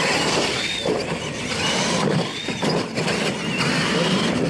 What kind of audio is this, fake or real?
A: real